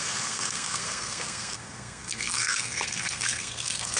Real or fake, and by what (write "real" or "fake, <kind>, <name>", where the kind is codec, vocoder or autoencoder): fake, codec, SNAC